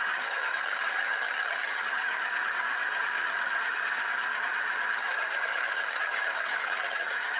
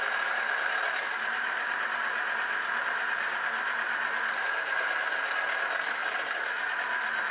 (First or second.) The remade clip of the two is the first